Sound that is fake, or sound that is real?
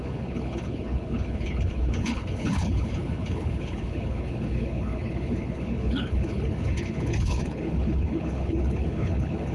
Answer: fake